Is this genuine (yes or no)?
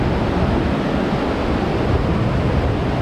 yes